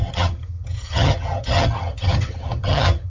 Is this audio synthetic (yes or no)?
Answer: yes